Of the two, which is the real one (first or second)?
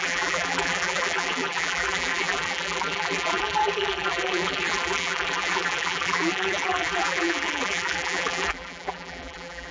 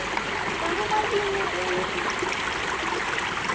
second